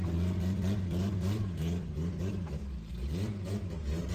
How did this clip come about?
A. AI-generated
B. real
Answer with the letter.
B